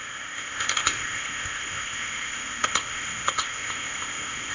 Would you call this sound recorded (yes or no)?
no